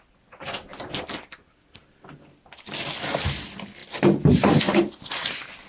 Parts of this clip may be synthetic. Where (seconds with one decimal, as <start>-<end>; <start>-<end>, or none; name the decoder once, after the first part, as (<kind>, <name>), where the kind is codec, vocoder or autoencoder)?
none